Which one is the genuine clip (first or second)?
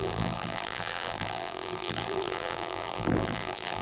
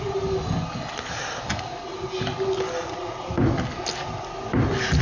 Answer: second